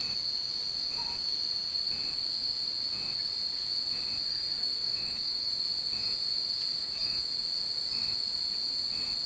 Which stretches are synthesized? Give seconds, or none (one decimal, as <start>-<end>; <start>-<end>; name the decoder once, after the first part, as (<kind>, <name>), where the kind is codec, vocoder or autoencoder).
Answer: 4.7-5.5 (autoencoder, DAC-VAE); 6.7-7.3

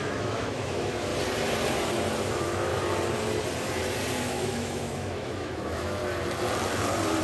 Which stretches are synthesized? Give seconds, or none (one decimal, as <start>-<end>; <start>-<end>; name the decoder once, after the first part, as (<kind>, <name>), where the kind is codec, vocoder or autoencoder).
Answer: 0.0-1.1 (autoencoder, DAC-VAE); 2.3-2.7; 4.2-6.0